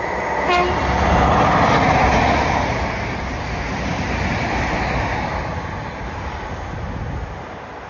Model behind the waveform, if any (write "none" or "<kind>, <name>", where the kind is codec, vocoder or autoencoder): none